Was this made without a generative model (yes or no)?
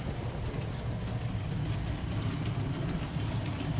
yes